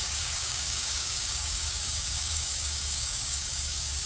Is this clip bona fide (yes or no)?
no